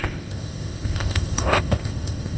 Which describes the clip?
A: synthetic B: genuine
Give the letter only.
A